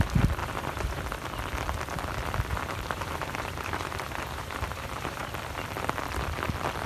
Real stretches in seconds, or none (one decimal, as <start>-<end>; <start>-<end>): 0.0-0.4; 1.0-2.5; 5.3-6.9